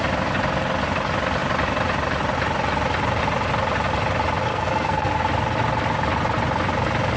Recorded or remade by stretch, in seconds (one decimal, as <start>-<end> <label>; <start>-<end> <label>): 0.0-4.5 recorded; 4.5-5.2 remade; 5.2-7.2 recorded